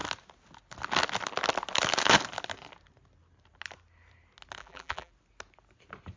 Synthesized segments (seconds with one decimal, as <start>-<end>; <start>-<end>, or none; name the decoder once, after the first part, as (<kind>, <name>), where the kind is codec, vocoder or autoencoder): 4.6-5.1 (vocoder, BigVGAN v2)